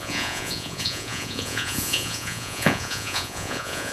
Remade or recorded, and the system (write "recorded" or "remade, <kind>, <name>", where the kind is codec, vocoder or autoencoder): remade, vocoder, Vocos